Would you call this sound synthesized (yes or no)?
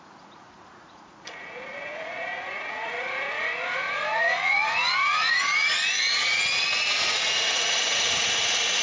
yes